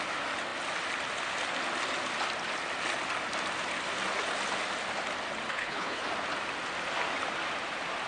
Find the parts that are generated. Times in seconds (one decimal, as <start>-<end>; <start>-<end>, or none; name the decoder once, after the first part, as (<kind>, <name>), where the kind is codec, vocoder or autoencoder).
5.5-6.0 (codec, HILCodec)